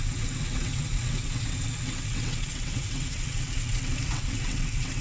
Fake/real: fake